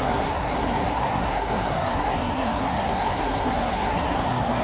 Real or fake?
fake